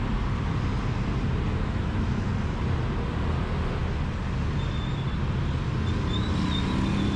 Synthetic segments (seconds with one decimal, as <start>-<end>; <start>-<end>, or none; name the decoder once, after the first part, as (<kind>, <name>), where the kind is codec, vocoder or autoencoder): 1.5-2.3 (autoencoder, DAC-VAE)